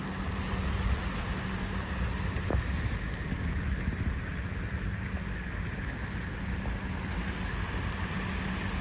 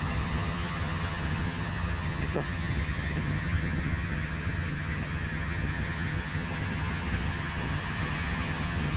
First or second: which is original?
first